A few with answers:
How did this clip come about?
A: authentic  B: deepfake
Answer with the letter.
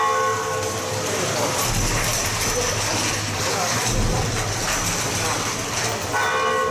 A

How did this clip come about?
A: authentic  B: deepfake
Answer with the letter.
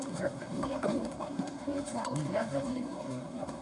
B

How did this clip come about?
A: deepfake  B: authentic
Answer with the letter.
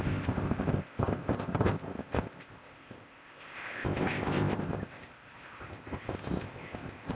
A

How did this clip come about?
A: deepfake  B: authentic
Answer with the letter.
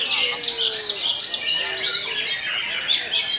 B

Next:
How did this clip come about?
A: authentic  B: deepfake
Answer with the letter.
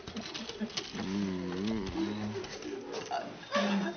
A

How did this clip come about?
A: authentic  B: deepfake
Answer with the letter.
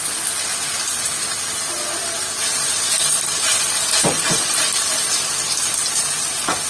A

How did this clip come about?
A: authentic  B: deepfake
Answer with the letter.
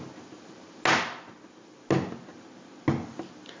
A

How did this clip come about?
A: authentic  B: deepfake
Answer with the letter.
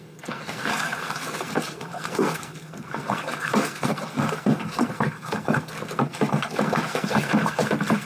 B